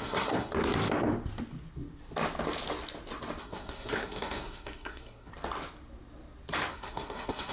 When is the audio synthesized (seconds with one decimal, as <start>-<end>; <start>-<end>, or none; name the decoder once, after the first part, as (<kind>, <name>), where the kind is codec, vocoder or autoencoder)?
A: 0.0-0.5 (codec, SNAC); 3.4-5.3; 6.7-7.5